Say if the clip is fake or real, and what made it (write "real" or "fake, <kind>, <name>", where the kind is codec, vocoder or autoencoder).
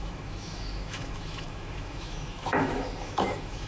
fake, autoencoder, DAC-VAE